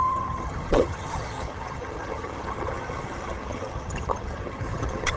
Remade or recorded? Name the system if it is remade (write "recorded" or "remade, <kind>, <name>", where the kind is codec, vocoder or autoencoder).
remade, vocoder, HiFi-GAN